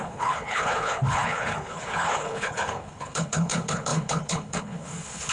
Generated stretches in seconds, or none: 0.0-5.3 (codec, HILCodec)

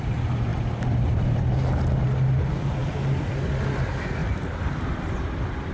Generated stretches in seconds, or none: 0.5-1.6 (vocoder, BigVGAN v2); 4.2-4.8

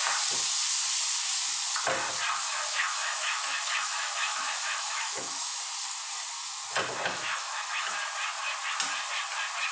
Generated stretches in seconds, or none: 2.5-5.6 (autoencoder, DAC-VAE); 7.1-7.9

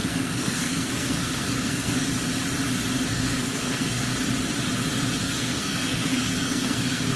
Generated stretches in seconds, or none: 0.0-2.1 (codec, SNAC); 3.1-4.1; 5.2-7.2

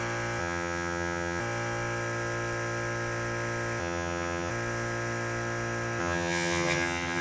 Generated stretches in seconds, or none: 0.4-1.4 (vocoder, HiFi-GAN); 3.8-4.5; 6.0-7.2

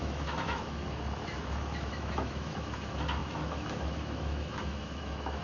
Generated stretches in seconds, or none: 0.0-5.4 (autoencoder, DAC-VAE)

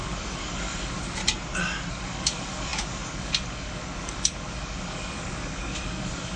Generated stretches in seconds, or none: 0.0-1.2 (codec, DAC); 1.9-6.4

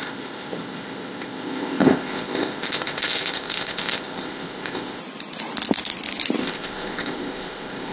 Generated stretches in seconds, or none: 0.0-5.0 (codec, ZipCodec); 6.4-7.9